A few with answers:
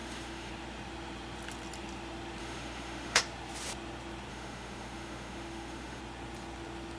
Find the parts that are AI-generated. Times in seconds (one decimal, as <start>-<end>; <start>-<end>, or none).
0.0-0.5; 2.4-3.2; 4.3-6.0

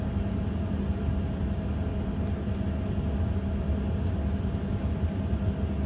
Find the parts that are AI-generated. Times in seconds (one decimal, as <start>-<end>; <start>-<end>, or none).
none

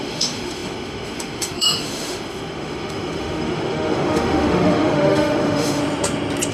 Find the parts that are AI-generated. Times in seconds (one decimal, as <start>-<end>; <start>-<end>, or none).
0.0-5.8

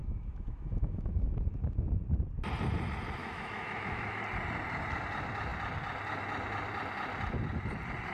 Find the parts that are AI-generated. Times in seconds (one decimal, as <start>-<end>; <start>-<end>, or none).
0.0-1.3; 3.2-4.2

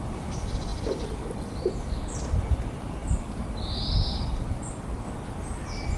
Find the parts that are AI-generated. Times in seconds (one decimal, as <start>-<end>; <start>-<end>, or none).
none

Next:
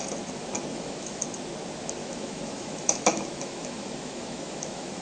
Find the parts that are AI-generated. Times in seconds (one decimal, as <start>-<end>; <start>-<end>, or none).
0.7-1.2; 2.0-5.0

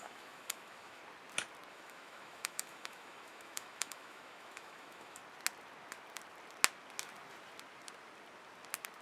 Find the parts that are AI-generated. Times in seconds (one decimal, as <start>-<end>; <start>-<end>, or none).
0.0-1.0; 1.7-5.2

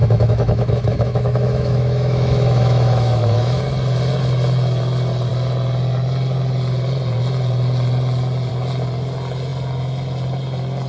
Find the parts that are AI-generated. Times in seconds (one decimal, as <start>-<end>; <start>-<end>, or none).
0.0-3.6